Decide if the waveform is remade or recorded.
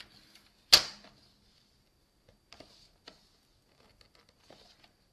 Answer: recorded